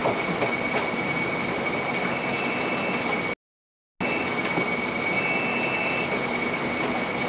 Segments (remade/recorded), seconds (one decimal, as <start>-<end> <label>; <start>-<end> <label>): 0.0-7.3 recorded